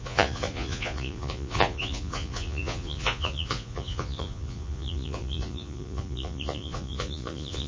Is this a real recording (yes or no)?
no